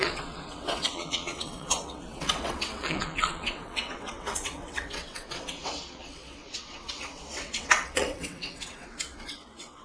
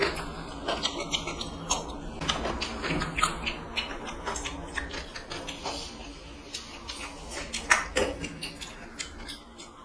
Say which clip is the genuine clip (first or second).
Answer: second